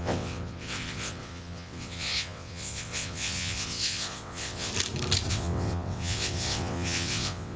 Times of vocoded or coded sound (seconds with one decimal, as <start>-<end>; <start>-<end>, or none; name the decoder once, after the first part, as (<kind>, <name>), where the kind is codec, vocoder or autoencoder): 0.0-4.7 (vocoder, WaveNeXt); 5.3-7.6